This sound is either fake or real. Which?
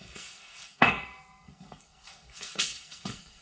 fake